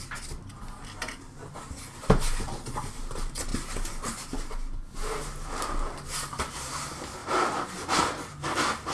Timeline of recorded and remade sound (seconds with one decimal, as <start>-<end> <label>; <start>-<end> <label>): 0.0-8.9 recorded